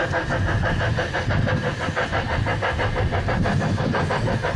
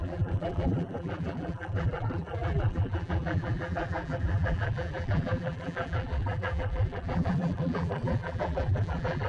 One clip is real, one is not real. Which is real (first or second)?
first